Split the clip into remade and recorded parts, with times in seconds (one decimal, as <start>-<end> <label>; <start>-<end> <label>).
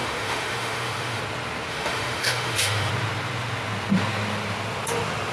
0.0-1.2 remade; 1.2-1.7 recorded; 1.7-2.9 remade; 2.9-5.3 recorded